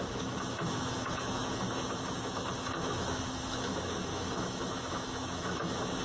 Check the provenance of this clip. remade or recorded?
remade